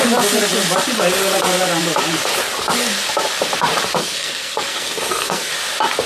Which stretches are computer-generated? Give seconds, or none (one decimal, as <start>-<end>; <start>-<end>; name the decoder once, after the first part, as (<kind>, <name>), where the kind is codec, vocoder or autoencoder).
4.0-5.5 (codec, SNAC)